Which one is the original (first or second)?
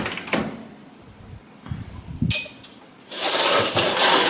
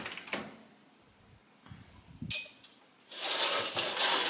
second